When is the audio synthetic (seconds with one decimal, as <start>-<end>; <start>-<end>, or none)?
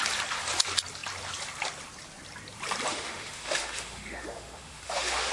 2.9-5.3